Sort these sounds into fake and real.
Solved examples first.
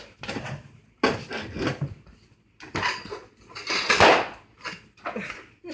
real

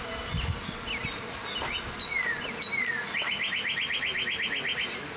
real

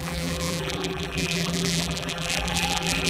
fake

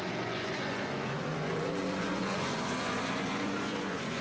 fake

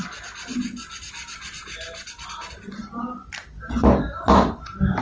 real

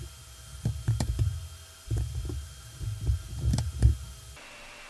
fake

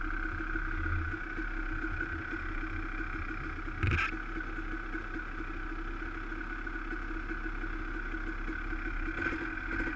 real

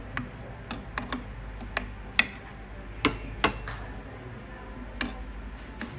real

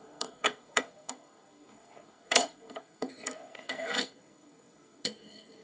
fake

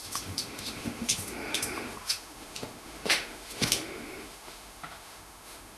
fake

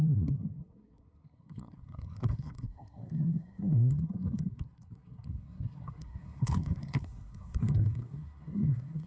fake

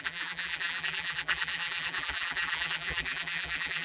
fake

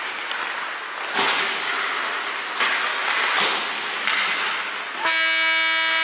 real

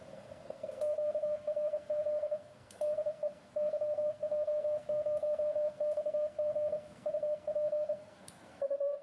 fake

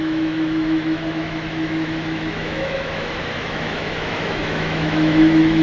fake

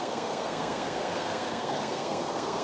fake